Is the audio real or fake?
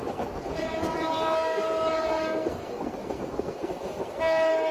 fake